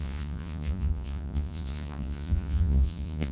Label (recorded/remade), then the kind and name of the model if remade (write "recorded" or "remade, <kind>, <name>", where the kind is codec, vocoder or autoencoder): remade, vocoder, Vocos